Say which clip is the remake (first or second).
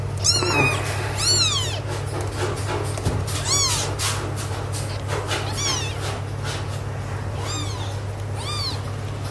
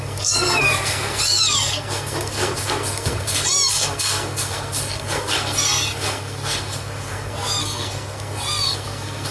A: second